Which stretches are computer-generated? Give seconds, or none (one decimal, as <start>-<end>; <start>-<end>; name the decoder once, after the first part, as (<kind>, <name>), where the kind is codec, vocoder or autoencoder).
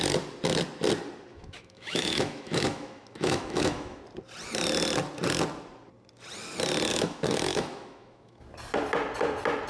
1.3-4.0 (autoencoder, DAC-VAE); 6.9-8.4